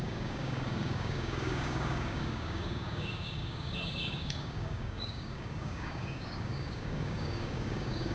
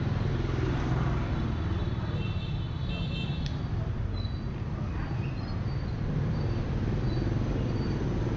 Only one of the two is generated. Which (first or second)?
first